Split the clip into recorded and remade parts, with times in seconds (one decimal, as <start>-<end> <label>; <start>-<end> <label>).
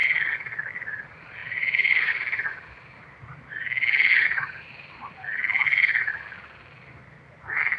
0.0-7.8 remade